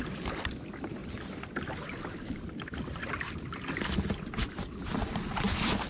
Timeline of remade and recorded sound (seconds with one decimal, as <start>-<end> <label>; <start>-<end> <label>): 0.0-5.9 recorded